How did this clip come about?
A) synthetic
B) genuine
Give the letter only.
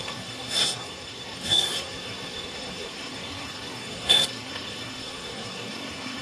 A